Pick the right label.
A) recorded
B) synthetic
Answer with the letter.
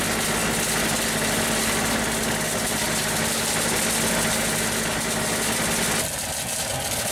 A